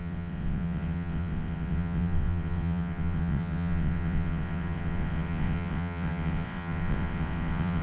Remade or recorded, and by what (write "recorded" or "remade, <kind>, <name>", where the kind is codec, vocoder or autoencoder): remade, vocoder, WaveNeXt